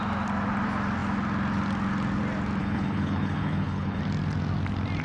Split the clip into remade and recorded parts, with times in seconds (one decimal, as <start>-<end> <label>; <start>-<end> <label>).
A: 0.0-2.6 recorded; 2.6-4.0 remade; 4.0-5.0 recorded